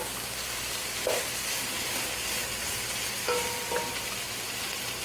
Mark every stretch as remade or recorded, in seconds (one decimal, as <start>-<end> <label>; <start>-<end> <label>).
0.0-5.0 recorded